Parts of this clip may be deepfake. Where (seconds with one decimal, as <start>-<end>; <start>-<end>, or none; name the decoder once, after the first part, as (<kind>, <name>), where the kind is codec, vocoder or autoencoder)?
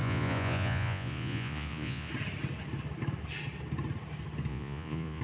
0.0-2.1 (vocoder, Vocos); 4.5-5.2